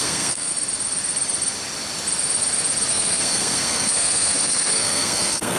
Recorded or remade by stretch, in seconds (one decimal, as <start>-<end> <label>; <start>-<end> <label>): 0.0-0.5 remade; 0.5-2.9 recorded; 2.9-5.6 remade